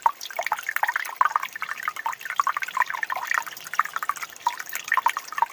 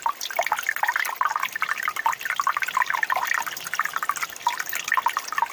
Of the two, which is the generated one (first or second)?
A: first